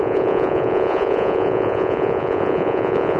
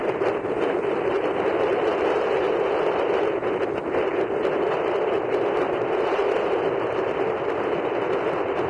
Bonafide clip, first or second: second